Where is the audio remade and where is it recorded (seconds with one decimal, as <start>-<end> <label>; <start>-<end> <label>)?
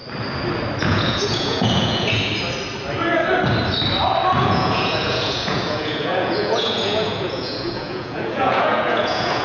0.0-0.8 recorded; 0.8-2.3 remade; 2.3-4.4 recorded; 4.4-9.4 remade